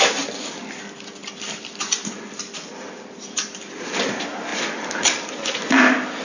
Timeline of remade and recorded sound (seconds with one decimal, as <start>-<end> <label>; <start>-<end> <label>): 0.0-1.2 recorded; 1.2-3.7 remade; 3.7-4.5 recorded; 4.5-5.8 remade; 5.8-6.2 recorded